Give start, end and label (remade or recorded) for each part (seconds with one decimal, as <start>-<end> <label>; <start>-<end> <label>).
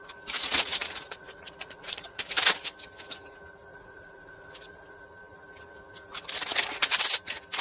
0.0-0.5 recorded; 0.5-2.2 remade; 2.2-3.7 recorded; 3.7-5.0 remade; 5.0-7.6 recorded